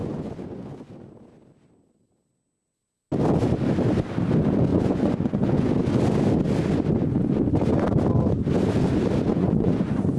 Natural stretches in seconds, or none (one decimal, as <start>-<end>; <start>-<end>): 1.1-4.7; 5.7-9.3